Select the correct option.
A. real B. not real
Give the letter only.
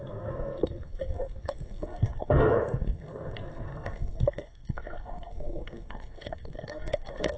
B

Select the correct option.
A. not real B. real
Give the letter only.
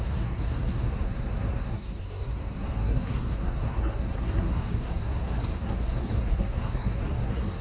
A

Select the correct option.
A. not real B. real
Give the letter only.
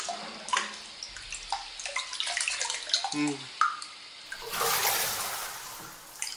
B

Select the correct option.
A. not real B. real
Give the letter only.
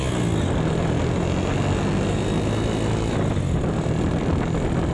B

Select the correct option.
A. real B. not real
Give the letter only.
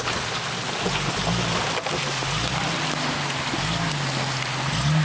A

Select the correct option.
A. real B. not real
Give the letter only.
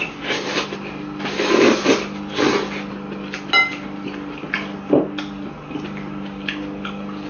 A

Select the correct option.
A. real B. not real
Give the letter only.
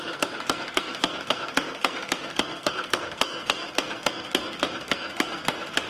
B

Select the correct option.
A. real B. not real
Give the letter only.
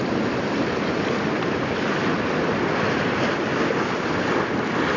A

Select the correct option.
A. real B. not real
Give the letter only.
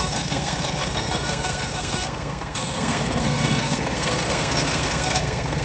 B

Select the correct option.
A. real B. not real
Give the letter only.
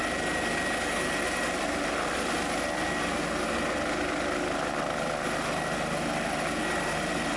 A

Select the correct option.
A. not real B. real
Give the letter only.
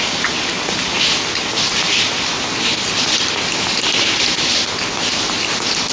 B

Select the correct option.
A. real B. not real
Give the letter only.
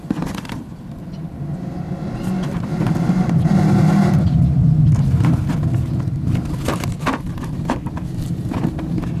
A